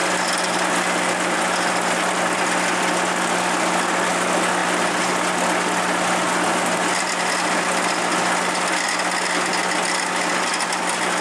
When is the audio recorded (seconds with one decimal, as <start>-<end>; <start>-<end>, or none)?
0.0-11.2